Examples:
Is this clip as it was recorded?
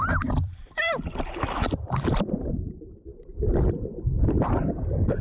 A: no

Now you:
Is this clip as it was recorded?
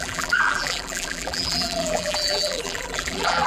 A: no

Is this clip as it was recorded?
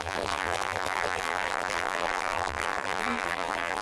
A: no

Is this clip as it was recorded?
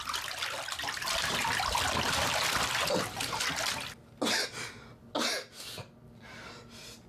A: yes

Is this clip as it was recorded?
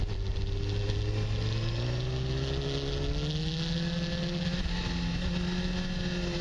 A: yes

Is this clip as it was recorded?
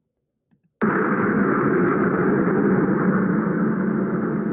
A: yes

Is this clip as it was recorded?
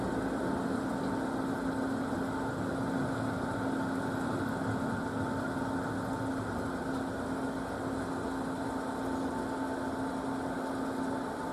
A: yes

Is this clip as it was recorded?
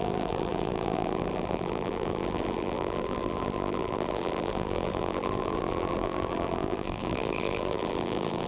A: no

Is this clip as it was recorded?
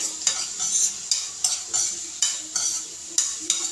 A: yes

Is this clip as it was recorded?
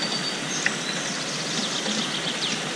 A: yes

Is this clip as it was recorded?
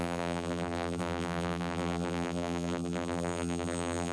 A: no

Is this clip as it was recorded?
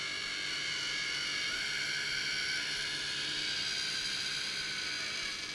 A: yes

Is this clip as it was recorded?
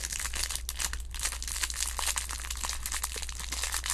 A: yes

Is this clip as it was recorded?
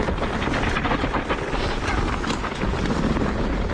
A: yes